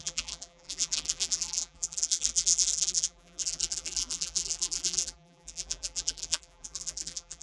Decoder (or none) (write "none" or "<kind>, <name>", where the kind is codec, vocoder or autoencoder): vocoder, BigVGAN v2